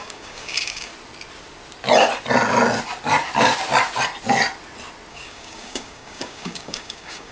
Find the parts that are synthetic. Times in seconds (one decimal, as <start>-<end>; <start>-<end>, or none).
0.0-0.9; 5.1-7.3